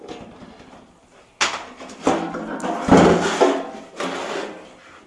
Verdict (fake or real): real